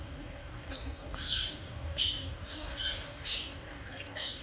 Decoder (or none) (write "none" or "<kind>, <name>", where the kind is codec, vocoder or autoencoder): codec, DAC